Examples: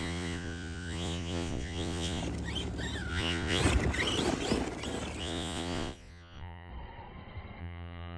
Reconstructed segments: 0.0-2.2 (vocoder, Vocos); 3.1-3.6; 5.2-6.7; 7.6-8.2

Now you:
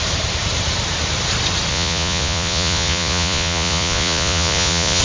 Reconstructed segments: 1.7-5.0 (vocoder, Vocos)

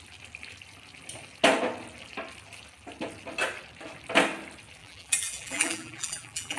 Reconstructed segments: 4.8-6.6 (vocoder, BigVGAN v2)

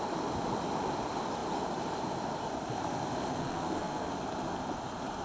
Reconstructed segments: 3.4-4.1 (codec, SNAC)